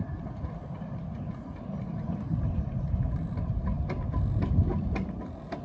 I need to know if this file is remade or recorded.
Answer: recorded